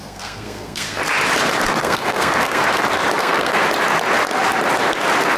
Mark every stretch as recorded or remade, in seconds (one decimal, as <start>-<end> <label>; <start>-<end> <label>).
0.0-1.0 remade; 1.0-1.8 recorded; 1.8-2.6 remade; 2.6-3.2 recorded; 3.2-3.6 remade; 3.6-5.4 recorded